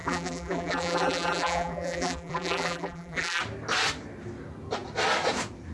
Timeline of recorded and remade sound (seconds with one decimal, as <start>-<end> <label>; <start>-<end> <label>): 0.0-3.4 remade; 3.4-5.7 recorded